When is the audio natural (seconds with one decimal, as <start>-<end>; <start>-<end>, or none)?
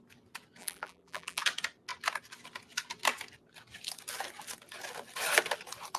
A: 0.0-0.6; 1.4-6.0